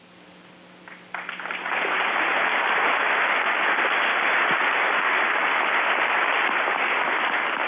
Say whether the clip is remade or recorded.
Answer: recorded